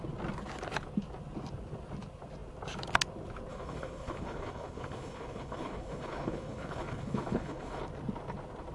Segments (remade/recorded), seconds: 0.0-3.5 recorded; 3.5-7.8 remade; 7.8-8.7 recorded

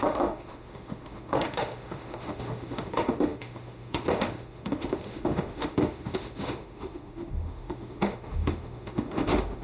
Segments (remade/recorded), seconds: 0.0-9.6 remade

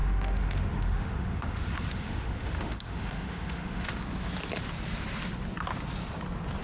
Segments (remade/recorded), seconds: 0.0-4.0 remade; 4.0-6.6 recorded

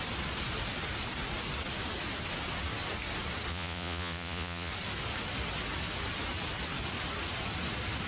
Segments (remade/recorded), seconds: 0.0-3.5 recorded; 3.5-4.7 remade; 4.7-8.1 recorded

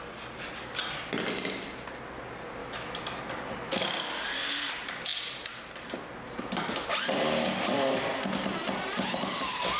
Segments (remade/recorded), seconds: 0.0-2.6 recorded; 2.6-3.2 remade; 3.2-9.8 recorded

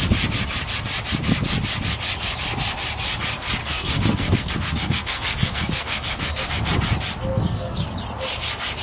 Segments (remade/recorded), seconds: 0.0-3.6 recorded; 3.6-6.5 remade; 6.5-7.3 recorded; 7.3-7.8 remade; 7.8-8.8 recorded

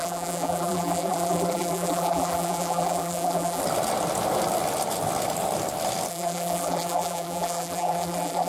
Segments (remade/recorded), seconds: 0.0-3.6 remade; 3.6-6.1 recorded; 6.1-8.5 remade